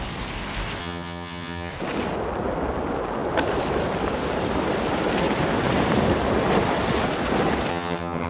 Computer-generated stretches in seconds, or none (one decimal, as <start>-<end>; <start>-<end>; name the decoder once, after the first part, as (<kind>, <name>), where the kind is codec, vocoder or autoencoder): 0.8-1.7 (vocoder, HiFi-GAN); 7.7-8.3